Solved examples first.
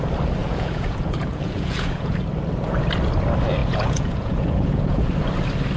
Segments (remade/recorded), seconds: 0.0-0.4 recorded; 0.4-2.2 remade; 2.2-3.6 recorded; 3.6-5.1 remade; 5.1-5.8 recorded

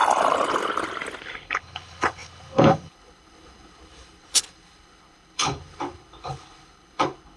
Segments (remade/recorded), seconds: 0.0-1.2 recorded; 1.2-7.4 remade

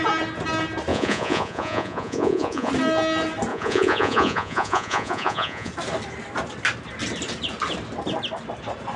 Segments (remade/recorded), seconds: 0.0-0.9 recorded; 0.9-2.7 remade; 2.7-3.5 recorded; 3.5-5.7 remade; 5.7-9.0 recorded

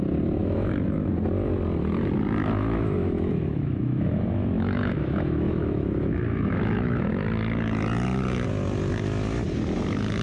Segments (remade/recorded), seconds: 0.0-0.4 recorded; 0.4-1.1 remade; 1.1-2.4 recorded; 2.4-7.1 remade; 7.1-10.2 recorded